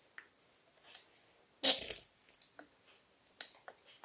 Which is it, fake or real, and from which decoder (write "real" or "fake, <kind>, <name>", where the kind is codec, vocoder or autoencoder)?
real